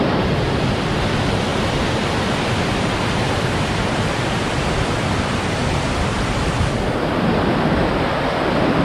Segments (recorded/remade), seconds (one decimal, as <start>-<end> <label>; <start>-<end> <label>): 0.0-8.8 remade